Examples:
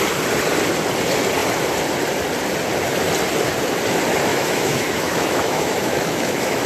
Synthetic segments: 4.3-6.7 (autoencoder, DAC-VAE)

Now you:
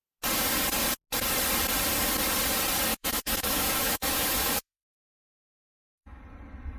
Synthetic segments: 2.9-6.2 (autoencoder, DAC-VAE)

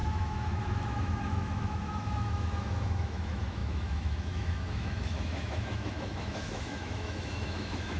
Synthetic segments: 0.0-8.0 (autoencoder, DAC-VAE)

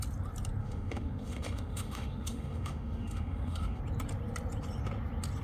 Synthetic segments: 0.6-3.8 (autoencoder, DAC-VAE)